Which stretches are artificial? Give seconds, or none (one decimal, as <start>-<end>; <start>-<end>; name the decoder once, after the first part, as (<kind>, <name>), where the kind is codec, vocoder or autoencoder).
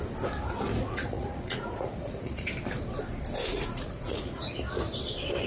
0.8-2.5 (vocoder, Vocos); 3.5-4.5